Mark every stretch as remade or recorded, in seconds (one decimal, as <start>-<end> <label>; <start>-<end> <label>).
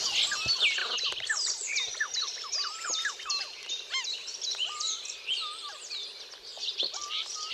0.0-0.8 recorded; 0.8-3.7 remade; 3.7-4.2 recorded; 4.2-5.3 remade; 5.3-6.5 recorded; 6.5-7.5 remade